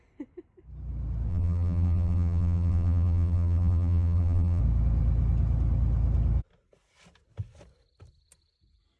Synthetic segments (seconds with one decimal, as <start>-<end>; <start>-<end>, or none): 1.3-4.6